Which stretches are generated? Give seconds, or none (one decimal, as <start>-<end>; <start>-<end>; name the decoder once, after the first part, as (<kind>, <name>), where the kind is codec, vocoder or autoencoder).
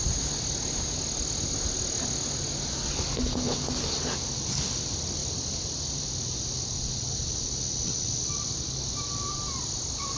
none